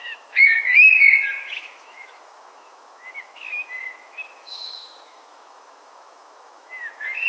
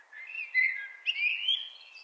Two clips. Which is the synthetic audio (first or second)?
first